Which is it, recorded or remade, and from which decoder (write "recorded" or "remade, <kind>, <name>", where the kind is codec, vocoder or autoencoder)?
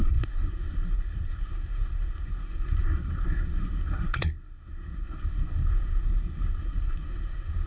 remade, codec, SNAC